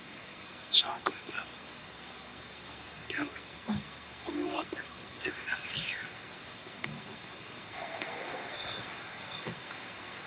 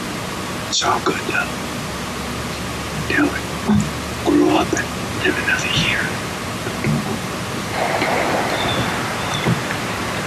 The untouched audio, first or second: second